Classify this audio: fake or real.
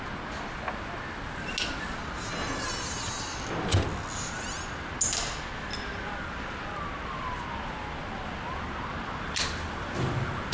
real